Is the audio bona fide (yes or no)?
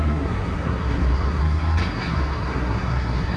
no